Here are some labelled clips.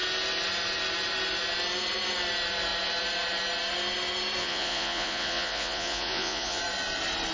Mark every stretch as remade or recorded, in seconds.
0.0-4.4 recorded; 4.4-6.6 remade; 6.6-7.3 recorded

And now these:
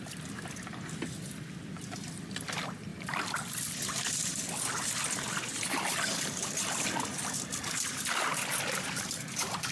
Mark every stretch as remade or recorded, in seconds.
0.0-9.7 recorded

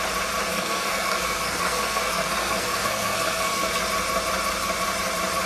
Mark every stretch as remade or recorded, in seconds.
0.0-0.5 recorded; 0.5-3.8 remade; 3.8-5.5 recorded

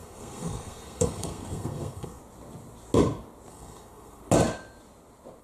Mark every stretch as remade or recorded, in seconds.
0.0-2.2 remade; 2.2-3.5 recorded; 3.5-4.2 remade; 4.2-5.4 recorded

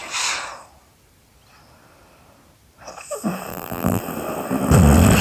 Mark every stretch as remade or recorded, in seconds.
0.0-3.5 recorded; 3.5-4.0 remade; 4.0-5.2 recorded

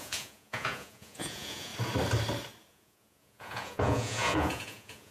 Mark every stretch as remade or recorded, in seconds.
0.0-1.7 remade; 1.7-2.7 recorded; 2.7-5.1 remade

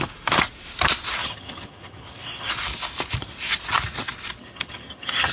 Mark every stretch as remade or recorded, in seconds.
0.0-1.2 recorded; 1.2-2.5 remade; 2.5-4.4 recorded; 4.4-5.3 remade

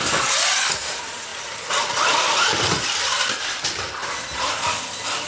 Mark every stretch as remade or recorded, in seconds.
0.0-5.3 remade